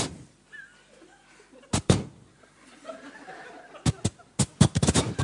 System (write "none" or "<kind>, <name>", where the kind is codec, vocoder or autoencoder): none